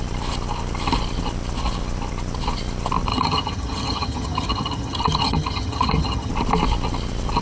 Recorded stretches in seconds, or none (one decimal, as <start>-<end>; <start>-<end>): 0.0-3.1; 6.3-7.4